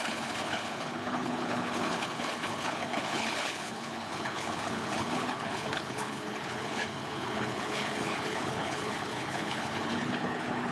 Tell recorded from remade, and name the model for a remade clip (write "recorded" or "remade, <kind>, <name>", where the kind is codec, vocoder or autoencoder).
remade, codec, HILCodec